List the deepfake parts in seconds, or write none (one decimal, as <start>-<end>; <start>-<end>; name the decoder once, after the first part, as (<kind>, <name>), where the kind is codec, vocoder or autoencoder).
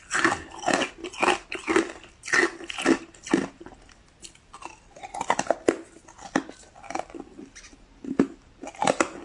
none